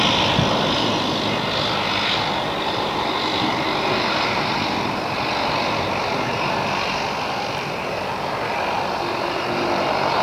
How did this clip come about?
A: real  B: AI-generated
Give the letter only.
A